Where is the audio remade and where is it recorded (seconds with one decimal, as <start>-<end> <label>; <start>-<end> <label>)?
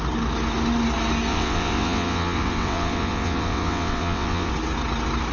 0.0-1.3 recorded; 1.3-4.5 remade; 4.5-5.3 recorded